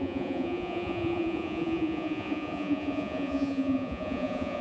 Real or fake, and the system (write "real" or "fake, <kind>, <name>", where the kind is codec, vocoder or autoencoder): fake, vocoder, Vocos